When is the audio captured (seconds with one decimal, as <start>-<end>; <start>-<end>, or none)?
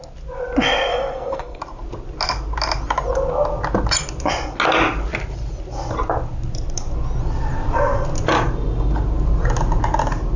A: 0.0-0.9; 1.6-10.4